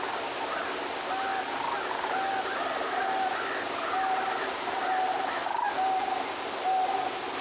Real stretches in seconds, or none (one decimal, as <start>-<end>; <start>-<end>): 0.0-1.3; 2.3-7.4